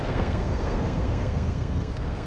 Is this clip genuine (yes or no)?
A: no